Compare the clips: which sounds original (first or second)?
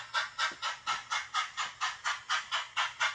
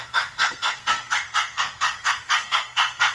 first